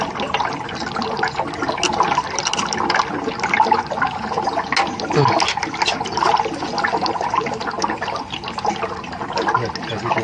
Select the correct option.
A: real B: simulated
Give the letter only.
A